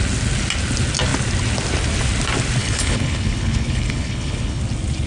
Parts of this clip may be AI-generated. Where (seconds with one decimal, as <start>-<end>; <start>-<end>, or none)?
2.6-4.6